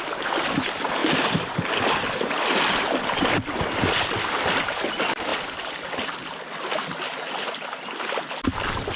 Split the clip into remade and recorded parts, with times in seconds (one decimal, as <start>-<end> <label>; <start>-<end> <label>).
0.0-9.0 recorded